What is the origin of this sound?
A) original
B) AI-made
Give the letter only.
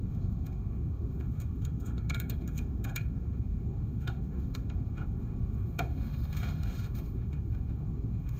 B